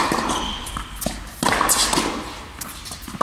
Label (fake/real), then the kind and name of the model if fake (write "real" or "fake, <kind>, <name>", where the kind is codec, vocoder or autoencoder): real